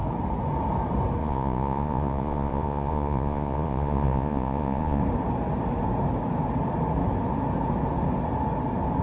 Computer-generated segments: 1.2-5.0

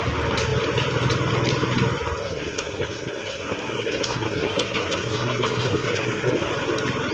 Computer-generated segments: 2.2-6.5

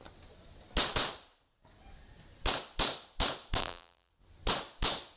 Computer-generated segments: 3.6-4.1

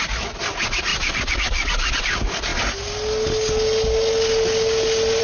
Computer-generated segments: 0.9-2.0

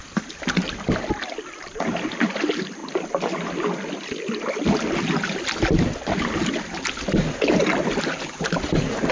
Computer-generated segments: none

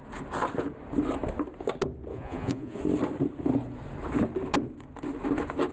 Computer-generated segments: 2.1-2.8

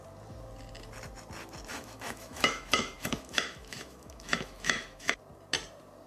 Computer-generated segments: 1.7-5.2

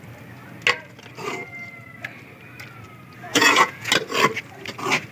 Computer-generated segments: 3.3-3.9